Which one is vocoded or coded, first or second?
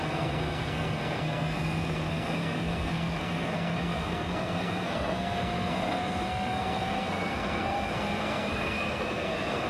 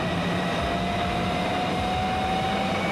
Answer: first